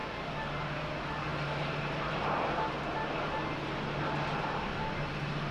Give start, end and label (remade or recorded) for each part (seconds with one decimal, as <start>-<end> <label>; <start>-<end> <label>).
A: 0.0-5.5 recorded